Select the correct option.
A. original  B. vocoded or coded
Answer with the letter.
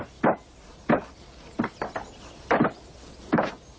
A